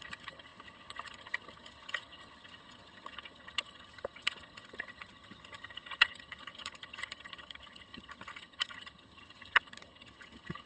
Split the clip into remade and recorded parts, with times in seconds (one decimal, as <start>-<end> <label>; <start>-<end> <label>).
0.0-10.7 remade